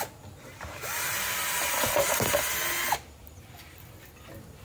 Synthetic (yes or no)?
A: no